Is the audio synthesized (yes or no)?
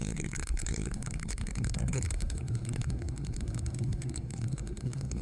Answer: yes